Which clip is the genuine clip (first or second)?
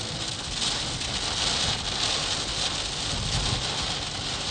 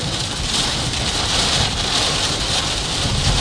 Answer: first